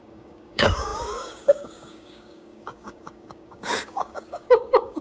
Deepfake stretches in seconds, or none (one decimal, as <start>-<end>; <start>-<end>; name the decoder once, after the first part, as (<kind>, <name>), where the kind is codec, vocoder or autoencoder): 0.0-5.0 (codec, DAC)